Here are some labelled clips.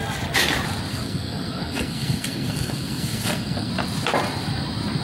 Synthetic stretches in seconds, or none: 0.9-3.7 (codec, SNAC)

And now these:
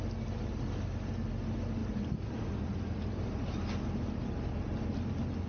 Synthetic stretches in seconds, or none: none

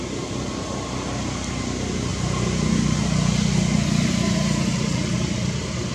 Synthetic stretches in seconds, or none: none

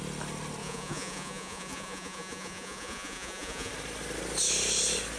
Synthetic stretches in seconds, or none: 0.6-3.7 (vocoder, Vocos)

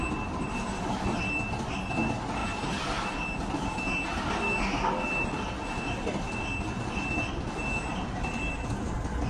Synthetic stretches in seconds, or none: none

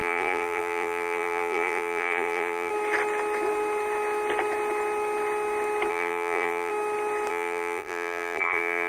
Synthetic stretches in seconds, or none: 0.0-2.7 (vocoder, BigVGAN v2); 5.9-6.7; 7.3-8.9

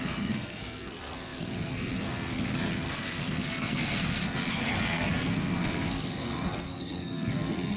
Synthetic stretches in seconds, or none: 0.0-7.8 (codec, SNAC)

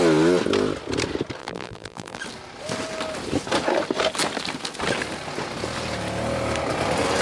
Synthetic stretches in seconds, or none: 1.4-2.2 (vocoder, BigVGAN v2)